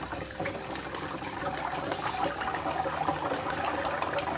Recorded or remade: recorded